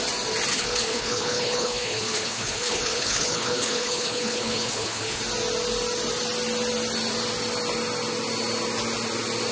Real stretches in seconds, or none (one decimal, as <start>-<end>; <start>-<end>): 0.0-0.5; 5.2-9.5